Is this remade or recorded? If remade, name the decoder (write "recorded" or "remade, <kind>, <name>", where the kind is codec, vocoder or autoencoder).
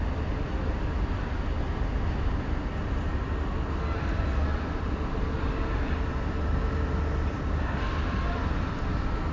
recorded